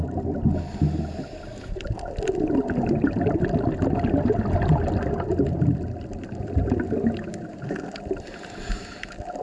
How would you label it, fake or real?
real